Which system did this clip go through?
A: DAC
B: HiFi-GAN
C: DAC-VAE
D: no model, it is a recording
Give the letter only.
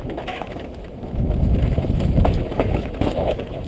C